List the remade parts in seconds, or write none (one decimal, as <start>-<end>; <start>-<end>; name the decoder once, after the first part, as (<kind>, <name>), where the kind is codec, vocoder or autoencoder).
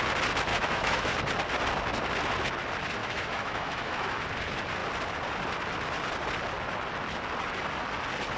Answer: 0.5-1.1 (autoencoder, DAC-VAE); 3.0-4.2